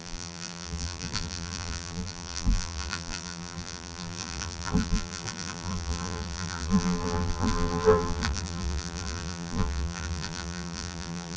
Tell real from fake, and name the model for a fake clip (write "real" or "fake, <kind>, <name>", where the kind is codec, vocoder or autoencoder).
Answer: fake, vocoder, BigVGAN v2